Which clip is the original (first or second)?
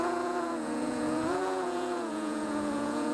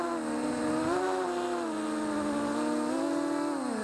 second